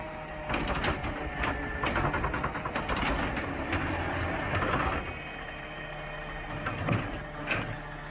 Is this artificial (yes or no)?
no